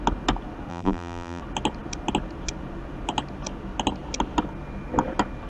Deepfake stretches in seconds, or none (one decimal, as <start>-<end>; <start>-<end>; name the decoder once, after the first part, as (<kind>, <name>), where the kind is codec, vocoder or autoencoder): 0.7-1.4 (vocoder, BigVGAN v2)